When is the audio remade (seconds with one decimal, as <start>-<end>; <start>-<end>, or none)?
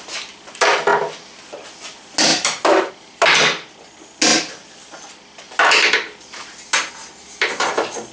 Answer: 2.3-2.9